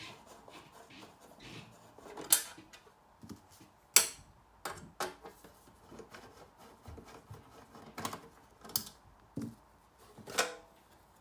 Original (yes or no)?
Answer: yes